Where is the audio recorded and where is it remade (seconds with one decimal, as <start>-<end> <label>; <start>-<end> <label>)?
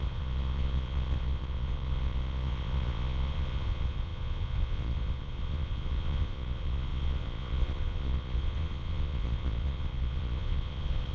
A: 0.0-11.1 remade